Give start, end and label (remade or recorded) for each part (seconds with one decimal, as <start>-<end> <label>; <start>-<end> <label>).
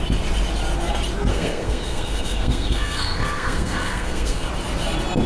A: 0.0-1.3 recorded; 1.3-4.5 remade; 4.5-5.3 recorded